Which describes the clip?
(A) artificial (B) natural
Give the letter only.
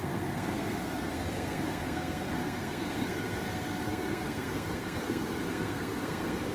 A